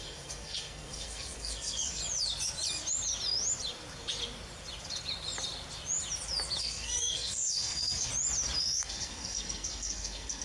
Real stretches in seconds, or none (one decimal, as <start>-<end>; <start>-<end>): 2.0-6.6; 8.1-8.6